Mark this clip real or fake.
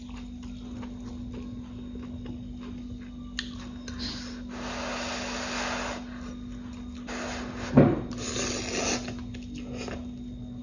real